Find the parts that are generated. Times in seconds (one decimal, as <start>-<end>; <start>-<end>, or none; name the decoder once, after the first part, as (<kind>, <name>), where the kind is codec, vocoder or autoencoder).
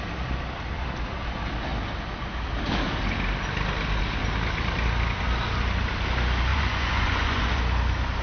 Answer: 6.5-7.6 (vocoder, Vocos)